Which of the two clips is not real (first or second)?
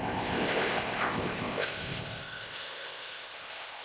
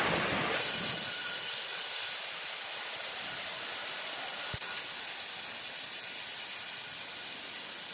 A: first